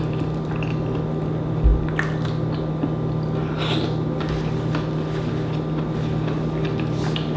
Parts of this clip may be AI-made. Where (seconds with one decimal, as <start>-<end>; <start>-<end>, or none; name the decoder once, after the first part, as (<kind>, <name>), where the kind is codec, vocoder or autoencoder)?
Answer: none